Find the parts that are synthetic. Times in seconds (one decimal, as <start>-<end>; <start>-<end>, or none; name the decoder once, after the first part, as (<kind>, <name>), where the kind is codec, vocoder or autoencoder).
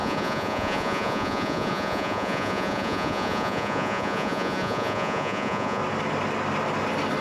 0.0-5.8 (vocoder, Vocos)